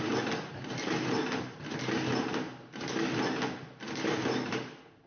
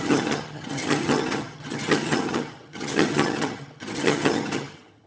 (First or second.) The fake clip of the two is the second